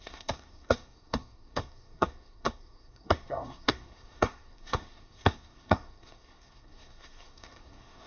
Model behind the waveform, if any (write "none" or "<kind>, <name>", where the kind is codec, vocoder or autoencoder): codec, SNAC